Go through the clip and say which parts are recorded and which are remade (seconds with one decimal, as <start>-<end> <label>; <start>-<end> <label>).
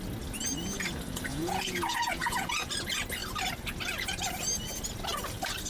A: 0.0-1.3 recorded; 1.3-2.7 remade; 2.7-5.7 recorded